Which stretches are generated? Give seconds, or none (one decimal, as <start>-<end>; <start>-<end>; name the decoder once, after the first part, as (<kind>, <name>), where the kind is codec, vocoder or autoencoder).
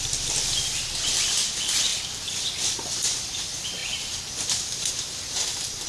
none